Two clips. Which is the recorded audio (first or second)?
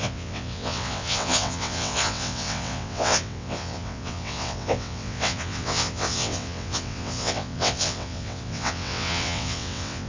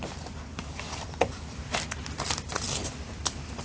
second